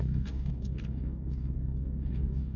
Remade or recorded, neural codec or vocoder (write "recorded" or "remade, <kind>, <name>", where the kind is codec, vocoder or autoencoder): remade, codec, DAC